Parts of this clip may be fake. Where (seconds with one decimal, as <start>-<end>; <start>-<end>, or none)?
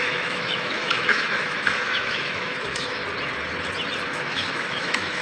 0.0-3.0; 4.1-5.2